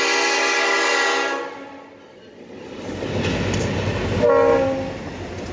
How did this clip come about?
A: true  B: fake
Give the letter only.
A